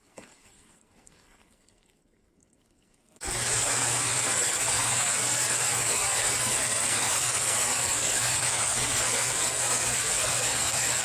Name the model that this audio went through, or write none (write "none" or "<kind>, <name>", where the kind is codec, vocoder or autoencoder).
codec, SNAC